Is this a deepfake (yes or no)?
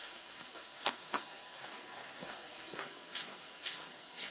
yes